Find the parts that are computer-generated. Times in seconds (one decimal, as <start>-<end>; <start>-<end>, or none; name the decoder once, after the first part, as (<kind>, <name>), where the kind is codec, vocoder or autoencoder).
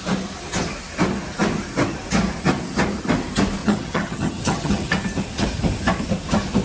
3.6-4.9 (vocoder, HiFi-GAN)